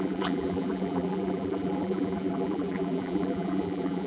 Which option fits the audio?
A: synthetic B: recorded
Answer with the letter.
A